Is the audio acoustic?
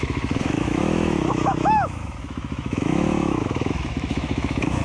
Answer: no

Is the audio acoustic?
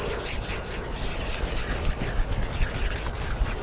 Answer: yes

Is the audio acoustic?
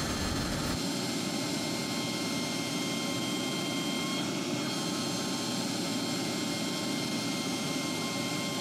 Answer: yes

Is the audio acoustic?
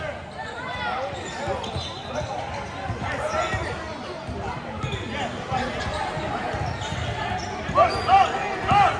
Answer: yes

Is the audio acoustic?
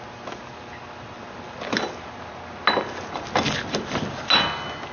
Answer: yes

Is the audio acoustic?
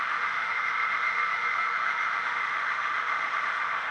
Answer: no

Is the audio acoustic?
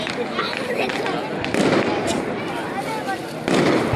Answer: yes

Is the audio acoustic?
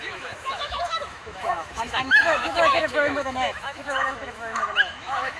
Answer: no